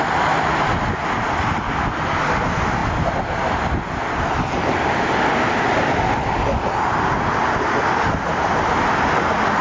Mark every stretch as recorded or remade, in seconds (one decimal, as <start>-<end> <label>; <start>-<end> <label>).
0.0-9.6 recorded